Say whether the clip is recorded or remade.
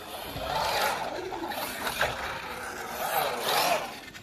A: recorded